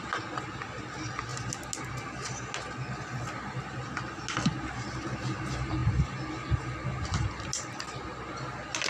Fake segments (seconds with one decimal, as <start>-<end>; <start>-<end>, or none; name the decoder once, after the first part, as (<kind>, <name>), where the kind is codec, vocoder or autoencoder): none